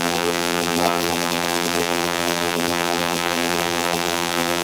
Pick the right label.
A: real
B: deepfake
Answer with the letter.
B